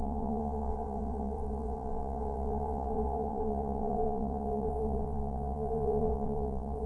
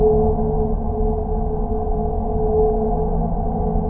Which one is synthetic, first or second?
first